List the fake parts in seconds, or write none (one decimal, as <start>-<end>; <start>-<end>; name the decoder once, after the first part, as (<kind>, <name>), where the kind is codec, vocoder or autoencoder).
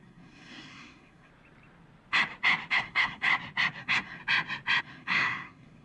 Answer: 0.0-1.3 (codec, SNAC); 2.7-3.3; 3.8-4.2; 4.8-5.8